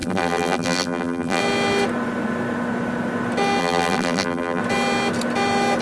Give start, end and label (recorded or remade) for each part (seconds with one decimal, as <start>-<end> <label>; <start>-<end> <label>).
0.0-1.4 remade; 1.4-3.6 recorded; 3.6-4.6 remade; 4.6-5.8 recorded